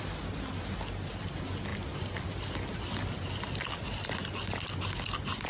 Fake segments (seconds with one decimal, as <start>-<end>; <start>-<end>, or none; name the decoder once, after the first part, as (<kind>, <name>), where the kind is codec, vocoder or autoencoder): none